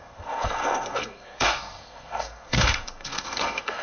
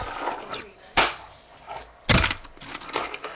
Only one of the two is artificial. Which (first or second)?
first